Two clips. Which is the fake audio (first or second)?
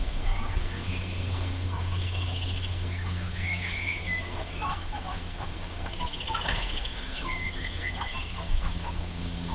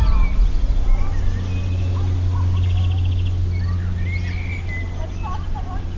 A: first